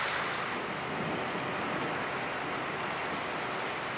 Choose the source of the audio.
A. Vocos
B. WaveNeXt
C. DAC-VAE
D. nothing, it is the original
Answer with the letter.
D